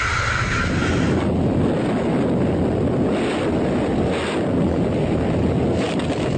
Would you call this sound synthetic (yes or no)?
no